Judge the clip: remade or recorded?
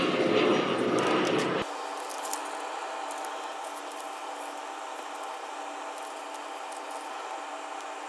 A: recorded